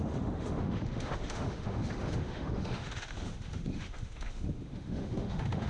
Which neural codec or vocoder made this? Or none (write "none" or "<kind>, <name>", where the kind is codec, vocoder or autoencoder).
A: autoencoder, DAC-VAE